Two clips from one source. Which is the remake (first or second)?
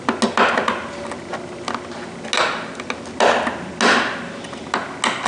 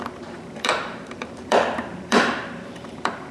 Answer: second